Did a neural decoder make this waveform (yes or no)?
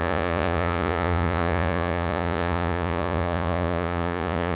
yes